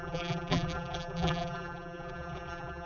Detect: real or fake fake